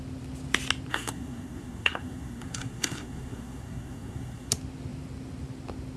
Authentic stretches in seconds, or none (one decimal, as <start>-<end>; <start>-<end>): 0.0-0.9; 4.5-6.0